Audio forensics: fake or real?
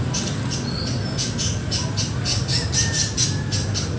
real